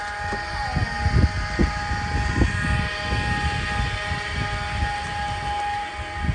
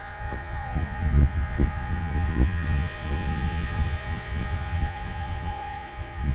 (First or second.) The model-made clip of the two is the second